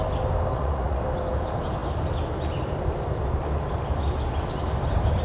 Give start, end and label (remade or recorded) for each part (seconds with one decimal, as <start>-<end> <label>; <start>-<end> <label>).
0.0-0.5 recorded; 0.5-1.0 remade; 1.0-5.2 recorded